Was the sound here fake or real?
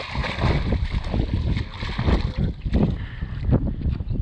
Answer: real